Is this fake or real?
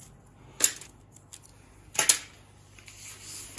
real